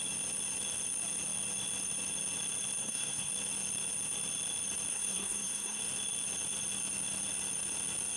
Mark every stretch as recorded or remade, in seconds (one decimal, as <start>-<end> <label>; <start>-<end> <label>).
0.0-2.8 recorded; 2.8-3.3 remade; 3.3-4.9 recorded; 4.9-5.8 remade; 5.8-8.2 recorded